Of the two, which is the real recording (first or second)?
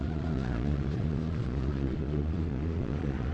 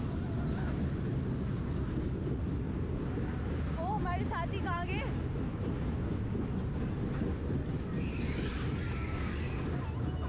second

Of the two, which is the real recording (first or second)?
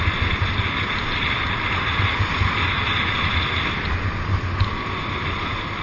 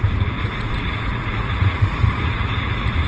first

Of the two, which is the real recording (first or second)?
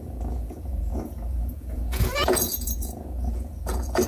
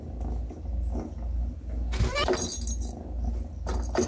second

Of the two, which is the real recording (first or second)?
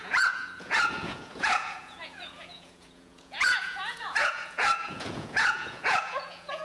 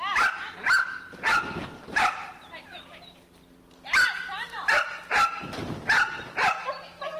second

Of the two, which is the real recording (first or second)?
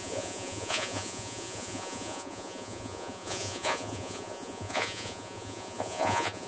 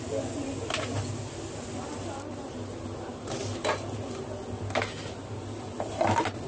second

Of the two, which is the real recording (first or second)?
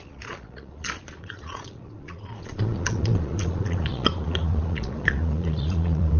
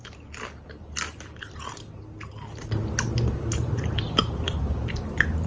second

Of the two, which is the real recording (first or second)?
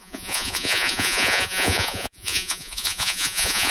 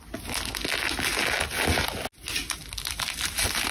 second